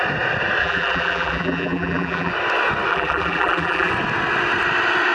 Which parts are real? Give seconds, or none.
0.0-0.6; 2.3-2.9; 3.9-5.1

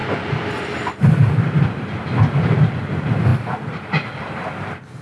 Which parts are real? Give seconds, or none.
0.0-5.0